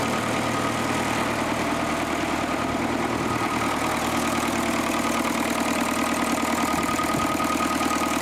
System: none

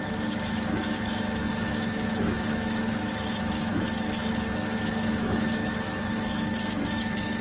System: autoencoder, DAC-VAE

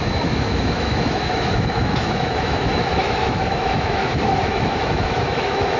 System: autoencoder, DAC-VAE